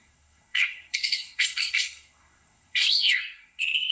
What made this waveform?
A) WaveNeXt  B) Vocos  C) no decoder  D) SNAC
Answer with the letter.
D